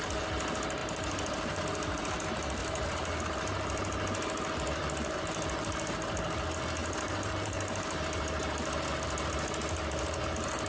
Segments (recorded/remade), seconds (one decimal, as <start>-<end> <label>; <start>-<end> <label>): 0.0-0.8 recorded; 0.8-1.6 remade; 1.6-2.6 recorded; 2.6-3.2 remade; 3.2-6.8 recorded; 6.8-9.5 remade; 9.5-10.7 recorded